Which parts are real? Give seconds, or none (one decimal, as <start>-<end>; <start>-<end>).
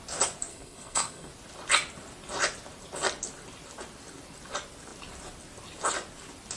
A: 0.0-0.5; 1.3-6.6